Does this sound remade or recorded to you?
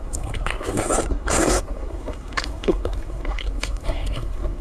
remade